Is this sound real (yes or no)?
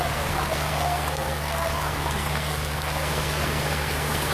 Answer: no